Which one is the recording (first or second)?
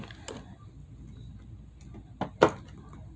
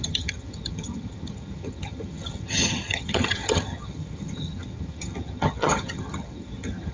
first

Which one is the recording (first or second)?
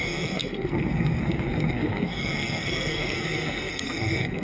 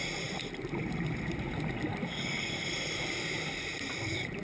second